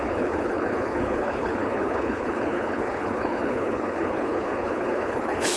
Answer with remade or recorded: remade